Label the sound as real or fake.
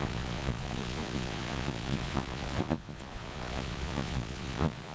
fake